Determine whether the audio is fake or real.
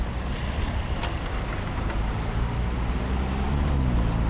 real